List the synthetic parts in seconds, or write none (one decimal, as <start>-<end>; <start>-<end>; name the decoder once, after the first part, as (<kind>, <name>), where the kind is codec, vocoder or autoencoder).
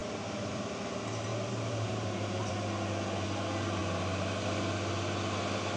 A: 0.0-0.7 (vocoder, BigVGAN v2); 1.3-2.5; 3.8-4.3